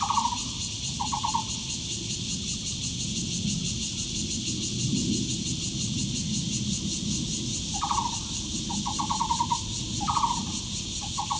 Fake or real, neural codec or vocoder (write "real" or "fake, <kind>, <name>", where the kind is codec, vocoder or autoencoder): real